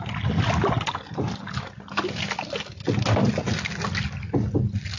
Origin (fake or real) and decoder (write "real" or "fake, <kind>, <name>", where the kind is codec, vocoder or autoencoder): real